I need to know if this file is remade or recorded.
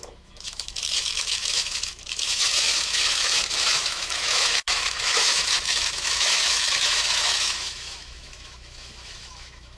remade